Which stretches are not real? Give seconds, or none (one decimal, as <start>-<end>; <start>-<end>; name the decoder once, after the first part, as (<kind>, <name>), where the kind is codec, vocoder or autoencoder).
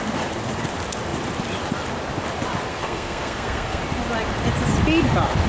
2.7-3.8 (codec, SNAC)